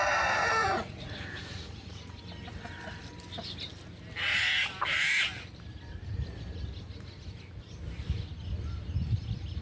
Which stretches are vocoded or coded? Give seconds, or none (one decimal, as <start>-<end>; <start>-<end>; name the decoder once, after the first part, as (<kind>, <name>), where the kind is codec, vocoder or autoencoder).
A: 0.6-2.2 (vocoder, Vocos)